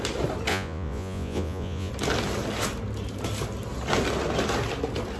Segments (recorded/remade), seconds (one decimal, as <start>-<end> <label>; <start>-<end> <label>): 0.0-0.5 recorded; 0.5-1.9 remade; 1.9-5.2 recorded